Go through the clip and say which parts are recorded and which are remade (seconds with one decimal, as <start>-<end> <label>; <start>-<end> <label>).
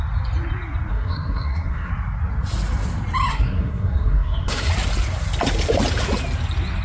0.0-0.9 recorded; 0.9-1.9 remade; 1.9-3.3 recorded; 3.3-4.7 remade; 4.7-6.8 recorded